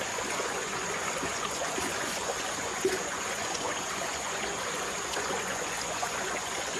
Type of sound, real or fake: fake